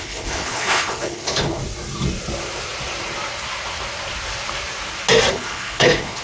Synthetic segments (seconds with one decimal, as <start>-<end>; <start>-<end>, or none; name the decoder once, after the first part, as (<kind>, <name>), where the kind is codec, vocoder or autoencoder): 0.0-1.6 (codec, HILCodec); 5.3-6.2